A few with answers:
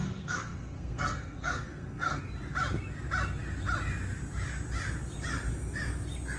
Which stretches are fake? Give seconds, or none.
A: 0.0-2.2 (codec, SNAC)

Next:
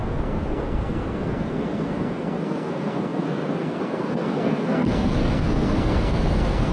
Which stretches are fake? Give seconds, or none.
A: 0.0-6.7 (codec, SNAC)

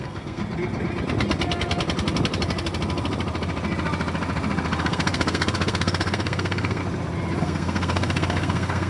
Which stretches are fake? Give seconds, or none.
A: 0.0-0.4 (codec, SNAC); 4.8-6.8; 7.4-8.9

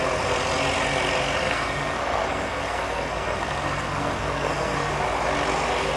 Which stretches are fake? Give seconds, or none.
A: 1.4-4.9 (codec, SNAC)

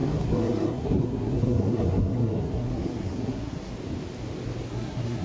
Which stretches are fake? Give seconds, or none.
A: 0.0-3.7 (codec, SNAC); 4.7-5.2

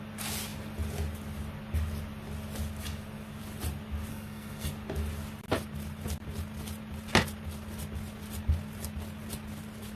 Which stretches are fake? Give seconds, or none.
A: 4.1-4.7 (codec, SNAC)